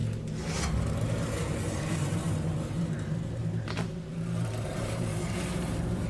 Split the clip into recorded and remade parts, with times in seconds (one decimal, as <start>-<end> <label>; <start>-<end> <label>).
0.0-0.7 recorded; 0.7-6.1 remade